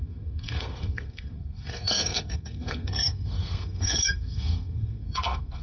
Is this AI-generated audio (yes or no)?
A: yes